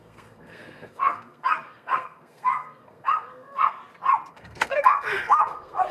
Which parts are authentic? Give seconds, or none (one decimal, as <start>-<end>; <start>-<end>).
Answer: 3.8-4.3